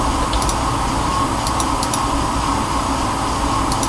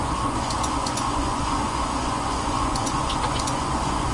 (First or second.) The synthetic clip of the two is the second